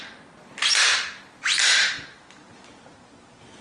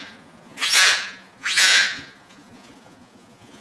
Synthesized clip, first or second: second